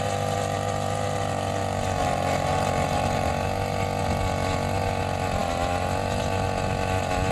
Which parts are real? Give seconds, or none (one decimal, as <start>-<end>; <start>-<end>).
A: 0.0-2.0; 3.3-7.3